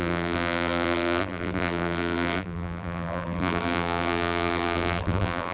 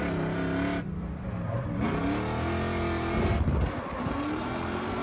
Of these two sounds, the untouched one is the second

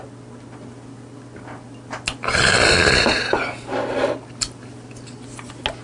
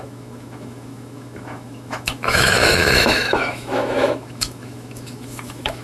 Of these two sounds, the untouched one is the first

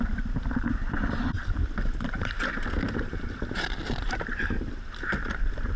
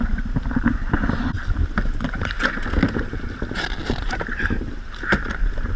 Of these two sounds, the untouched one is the second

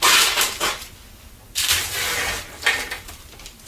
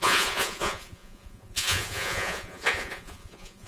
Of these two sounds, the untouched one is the first